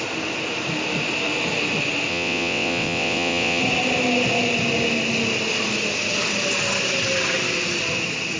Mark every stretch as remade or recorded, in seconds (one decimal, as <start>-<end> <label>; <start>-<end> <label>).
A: 0.0-2.1 recorded; 2.1-3.6 remade; 3.6-8.4 recorded